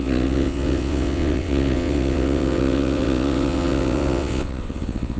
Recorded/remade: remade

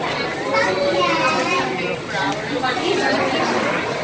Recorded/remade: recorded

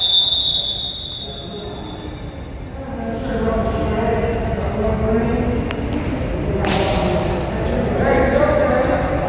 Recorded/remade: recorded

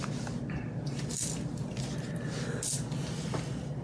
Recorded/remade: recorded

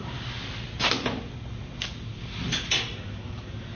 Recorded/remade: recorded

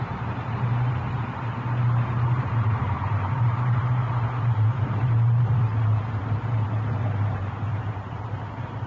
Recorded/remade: remade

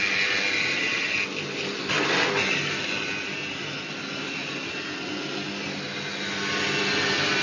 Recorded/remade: recorded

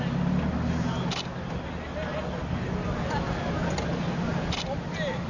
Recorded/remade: recorded